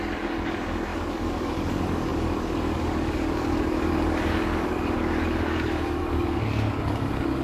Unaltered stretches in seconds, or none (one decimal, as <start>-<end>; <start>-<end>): none